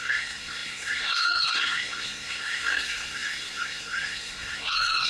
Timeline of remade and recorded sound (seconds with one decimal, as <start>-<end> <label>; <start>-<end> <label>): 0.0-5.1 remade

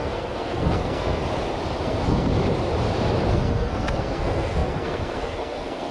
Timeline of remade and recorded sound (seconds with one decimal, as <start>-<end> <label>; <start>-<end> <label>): 0.0-1.2 remade; 1.2-1.8 recorded; 1.8-2.3 remade; 2.3-3.3 recorded; 3.3-5.9 remade

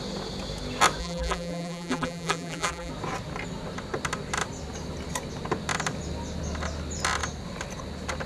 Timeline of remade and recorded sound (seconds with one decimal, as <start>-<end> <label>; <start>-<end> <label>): 0.0-1.0 recorded; 1.0-2.9 remade; 2.9-8.3 recorded

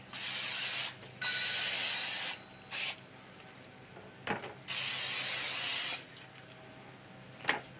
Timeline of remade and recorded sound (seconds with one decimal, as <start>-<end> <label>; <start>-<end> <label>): 0.0-7.8 recorded